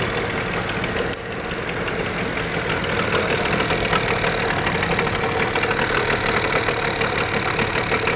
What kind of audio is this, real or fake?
real